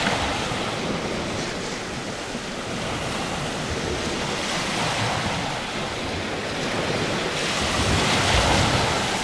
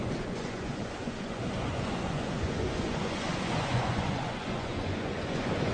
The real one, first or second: first